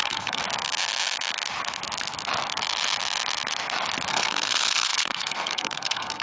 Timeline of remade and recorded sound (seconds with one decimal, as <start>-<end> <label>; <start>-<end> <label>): 0.0-0.4 remade; 0.4-4.1 recorded; 4.1-6.2 remade